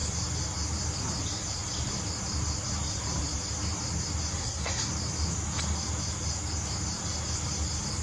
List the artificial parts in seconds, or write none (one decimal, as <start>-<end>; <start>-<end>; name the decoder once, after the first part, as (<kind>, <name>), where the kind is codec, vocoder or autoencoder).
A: 4.4-4.9 (codec, SNAC)